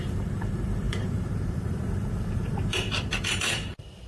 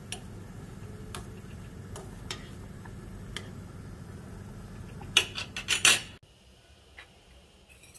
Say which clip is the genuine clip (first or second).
second